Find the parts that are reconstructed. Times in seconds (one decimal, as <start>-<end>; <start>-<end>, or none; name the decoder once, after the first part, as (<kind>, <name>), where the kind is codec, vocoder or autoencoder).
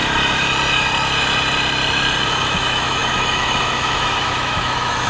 2.3-5.1 (autoencoder, DAC-VAE)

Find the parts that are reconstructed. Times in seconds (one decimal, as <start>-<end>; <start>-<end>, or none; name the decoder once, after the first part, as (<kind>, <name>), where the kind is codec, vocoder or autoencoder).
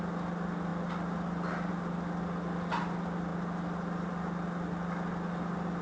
none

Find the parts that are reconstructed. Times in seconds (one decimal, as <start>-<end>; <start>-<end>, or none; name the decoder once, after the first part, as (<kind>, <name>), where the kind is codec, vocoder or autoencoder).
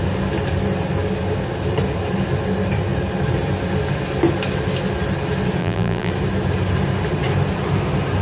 5.6-6.1 (vocoder, BigVGAN v2)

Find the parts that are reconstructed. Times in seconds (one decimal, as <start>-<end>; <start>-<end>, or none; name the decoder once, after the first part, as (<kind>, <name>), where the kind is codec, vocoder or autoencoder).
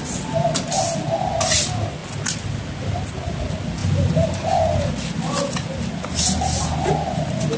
none